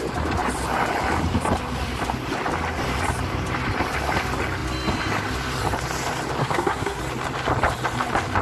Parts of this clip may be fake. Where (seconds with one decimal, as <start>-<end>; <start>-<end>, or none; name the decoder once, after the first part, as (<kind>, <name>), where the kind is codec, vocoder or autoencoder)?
6.4-7.0 (codec, SNAC)